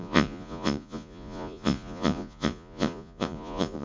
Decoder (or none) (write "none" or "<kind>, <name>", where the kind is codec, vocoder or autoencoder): vocoder, Vocos